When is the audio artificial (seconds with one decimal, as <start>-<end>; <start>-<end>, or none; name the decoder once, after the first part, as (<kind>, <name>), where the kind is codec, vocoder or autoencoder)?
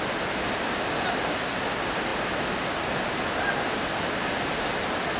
none